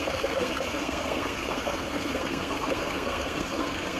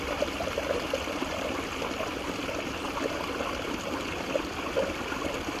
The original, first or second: second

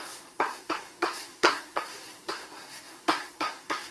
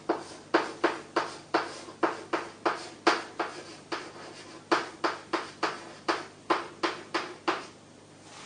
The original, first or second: second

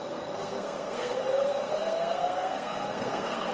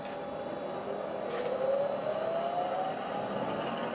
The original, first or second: second